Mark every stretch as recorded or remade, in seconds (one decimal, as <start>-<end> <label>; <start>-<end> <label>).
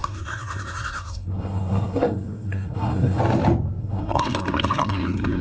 0.0-3.2 remade; 3.2-3.8 recorded; 3.8-5.4 remade